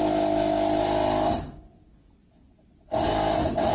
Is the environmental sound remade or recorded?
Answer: recorded